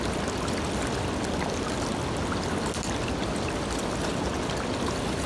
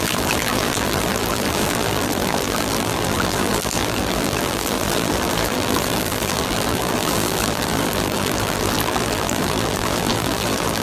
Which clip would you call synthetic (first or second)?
second